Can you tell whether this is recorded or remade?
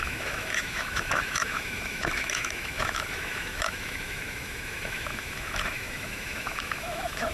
remade